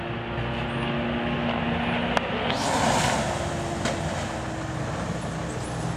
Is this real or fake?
real